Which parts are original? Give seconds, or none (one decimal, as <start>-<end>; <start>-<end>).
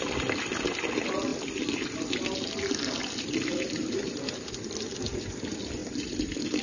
0.0-5.8